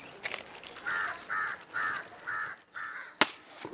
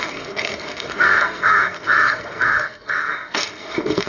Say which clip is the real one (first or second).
first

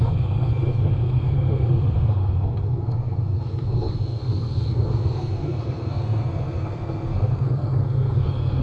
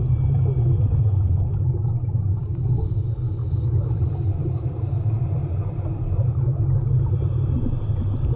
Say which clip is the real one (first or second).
second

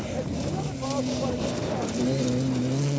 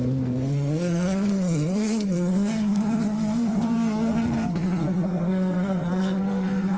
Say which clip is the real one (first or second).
first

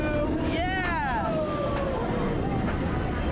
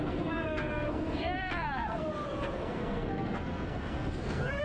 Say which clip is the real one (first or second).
first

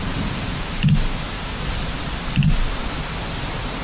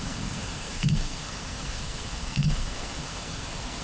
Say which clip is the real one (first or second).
first